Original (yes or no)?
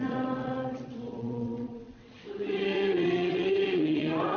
no